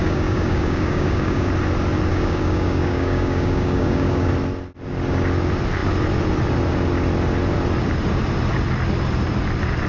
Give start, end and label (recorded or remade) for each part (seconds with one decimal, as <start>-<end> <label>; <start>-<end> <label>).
0.0-1.5 remade; 1.5-2.1 recorded; 2.1-4.3 remade; 4.3-9.9 recorded